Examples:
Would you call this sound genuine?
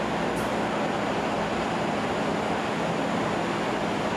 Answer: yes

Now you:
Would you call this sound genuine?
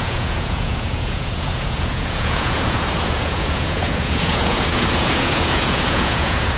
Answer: no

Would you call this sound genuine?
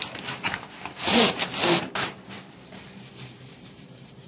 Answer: yes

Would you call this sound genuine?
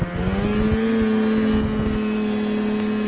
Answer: yes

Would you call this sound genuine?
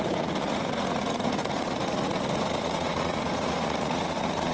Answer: no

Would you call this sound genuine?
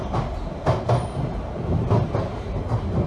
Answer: yes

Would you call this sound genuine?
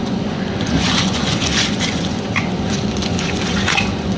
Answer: no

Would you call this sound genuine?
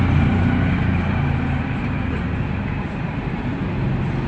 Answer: yes